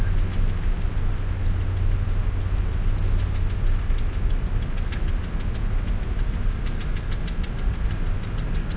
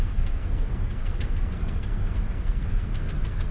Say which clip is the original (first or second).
first